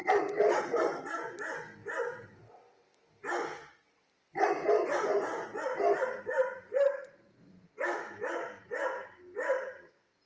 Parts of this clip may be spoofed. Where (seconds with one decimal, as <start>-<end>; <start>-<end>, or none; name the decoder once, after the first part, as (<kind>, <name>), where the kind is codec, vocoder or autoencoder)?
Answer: none